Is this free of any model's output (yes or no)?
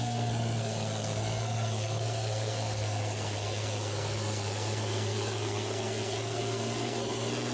no